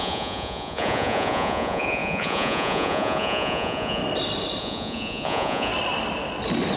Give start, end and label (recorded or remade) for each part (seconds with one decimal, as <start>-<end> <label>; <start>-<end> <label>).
0.0-4.0 remade; 4.0-4.6 recorded; 4.6-5.7 remade; 5.7-6.8 recorded